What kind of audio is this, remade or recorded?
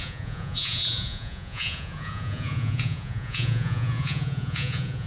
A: remade